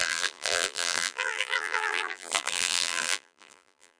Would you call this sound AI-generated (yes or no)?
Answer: yes